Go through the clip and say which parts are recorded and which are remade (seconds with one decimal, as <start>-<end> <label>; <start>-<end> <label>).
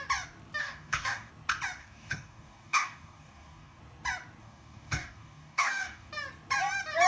0.0-0.6 recorded; 0.6-1.3 remade; 1.3-1.8 recorded; 1.8-3.8 remade; 3.8-4.4 recorded; 4.4-6.1 remade; 6.1-7.1 recorded